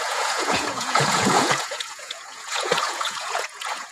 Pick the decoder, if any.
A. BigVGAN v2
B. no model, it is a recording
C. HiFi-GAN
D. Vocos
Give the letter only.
D